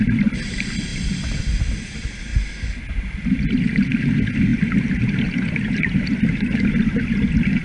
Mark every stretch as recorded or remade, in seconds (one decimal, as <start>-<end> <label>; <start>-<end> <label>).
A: 0.0-7.6 recorded